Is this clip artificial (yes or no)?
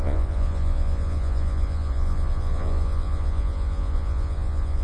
yes